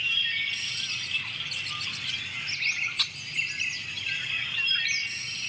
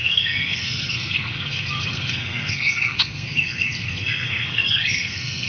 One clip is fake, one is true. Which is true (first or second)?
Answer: first